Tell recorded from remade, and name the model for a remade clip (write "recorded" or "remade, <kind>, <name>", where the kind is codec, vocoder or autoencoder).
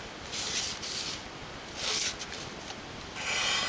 recorded